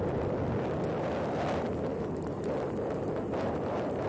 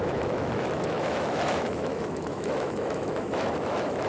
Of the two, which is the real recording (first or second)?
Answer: first